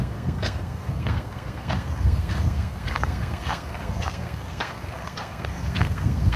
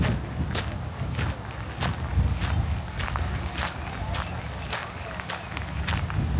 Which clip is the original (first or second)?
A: second